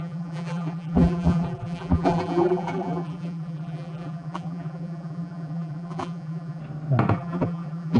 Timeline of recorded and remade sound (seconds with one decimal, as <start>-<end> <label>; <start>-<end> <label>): 0.0-6.6 remade; 6.6-7.1 recorded; 7.1-8.0 remade